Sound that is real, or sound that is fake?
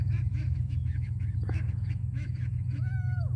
fake